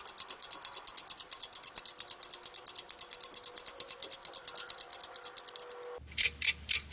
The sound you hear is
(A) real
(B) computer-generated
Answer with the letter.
A